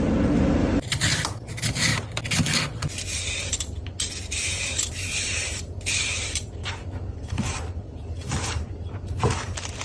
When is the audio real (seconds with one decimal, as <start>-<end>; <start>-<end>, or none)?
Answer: 1.9-4.9; 6.6-7.1